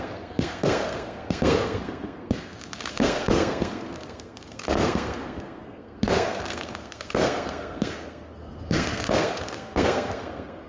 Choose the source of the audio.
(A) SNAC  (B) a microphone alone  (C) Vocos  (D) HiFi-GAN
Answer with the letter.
A